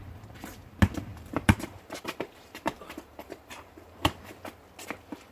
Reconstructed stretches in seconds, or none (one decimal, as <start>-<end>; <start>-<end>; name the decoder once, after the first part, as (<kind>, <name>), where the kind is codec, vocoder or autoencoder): 1.1-4.3 (vocoder, BigVGAN v2)